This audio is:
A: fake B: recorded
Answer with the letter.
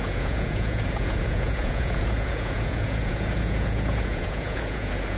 A